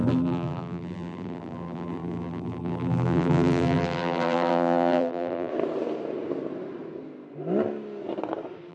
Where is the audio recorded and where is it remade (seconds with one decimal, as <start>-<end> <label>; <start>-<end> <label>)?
0.0-5.5 remade; 5.5-8.7 recorded